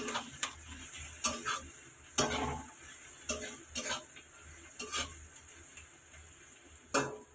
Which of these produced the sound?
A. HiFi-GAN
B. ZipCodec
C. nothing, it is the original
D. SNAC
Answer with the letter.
C